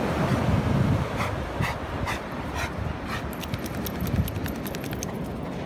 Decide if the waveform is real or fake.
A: real